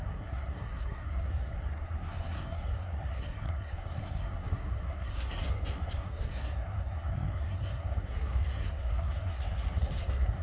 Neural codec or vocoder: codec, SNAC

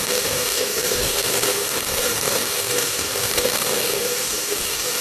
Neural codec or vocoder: codec, DAC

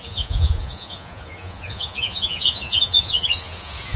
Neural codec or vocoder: vocoder, Vocos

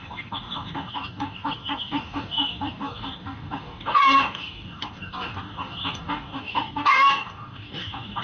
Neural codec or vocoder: codec, DAC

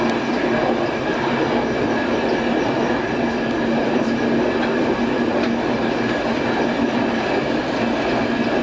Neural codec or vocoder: none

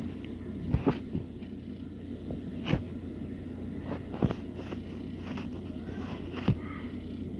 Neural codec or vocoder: none